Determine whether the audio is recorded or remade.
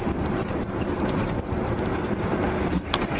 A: recorded